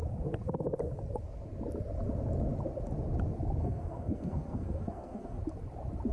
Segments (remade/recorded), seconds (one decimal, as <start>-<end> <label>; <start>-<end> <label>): 0.0-3.6 recorded; 3.6-5.4 remade; 5.4-6.1 recorded